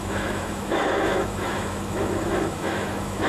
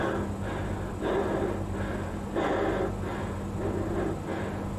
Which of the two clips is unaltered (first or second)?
second